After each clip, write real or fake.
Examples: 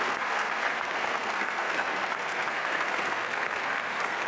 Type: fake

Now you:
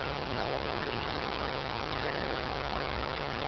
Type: fake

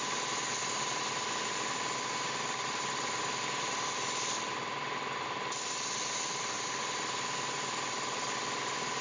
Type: real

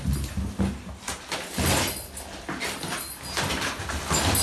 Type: real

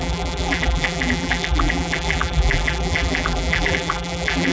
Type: fake